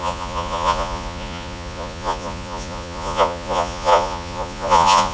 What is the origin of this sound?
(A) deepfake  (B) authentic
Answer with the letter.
A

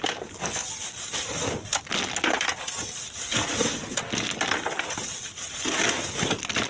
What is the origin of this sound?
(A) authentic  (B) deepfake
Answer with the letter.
A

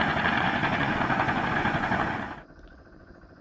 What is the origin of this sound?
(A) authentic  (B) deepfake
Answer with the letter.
B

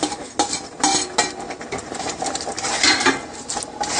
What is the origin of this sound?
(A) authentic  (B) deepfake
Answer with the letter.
A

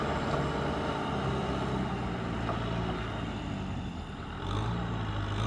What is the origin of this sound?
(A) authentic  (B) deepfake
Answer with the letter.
A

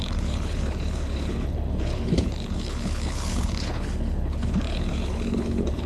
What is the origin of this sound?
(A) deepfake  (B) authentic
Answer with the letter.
A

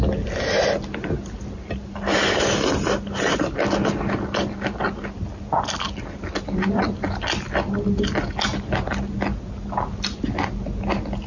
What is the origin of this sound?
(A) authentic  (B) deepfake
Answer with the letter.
A